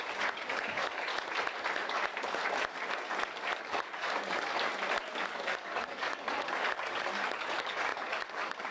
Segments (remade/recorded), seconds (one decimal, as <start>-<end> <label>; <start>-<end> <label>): 0.0-1.1 remade; 1.1-3.6 recorded; 3.6-4.7 remade; 4.7-5.2 recorded; 5.2-8.7 remade